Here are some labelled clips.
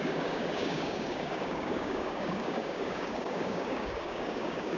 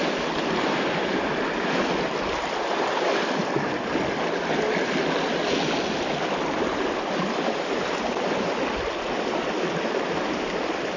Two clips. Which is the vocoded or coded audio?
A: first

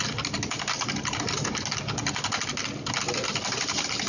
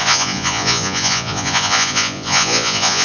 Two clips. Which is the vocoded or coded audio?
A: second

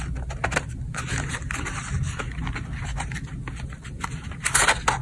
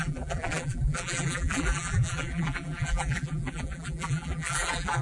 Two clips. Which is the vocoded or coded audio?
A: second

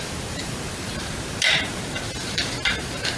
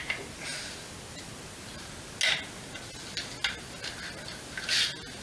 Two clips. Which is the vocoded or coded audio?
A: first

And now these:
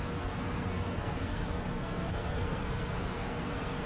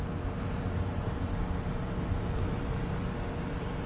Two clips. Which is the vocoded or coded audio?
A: first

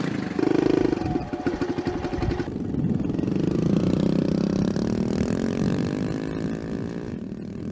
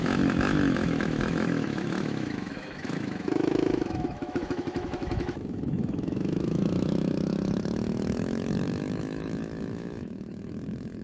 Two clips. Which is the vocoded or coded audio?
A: second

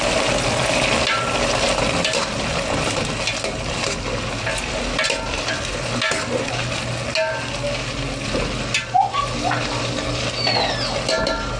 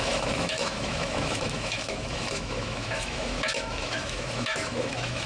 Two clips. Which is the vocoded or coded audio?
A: second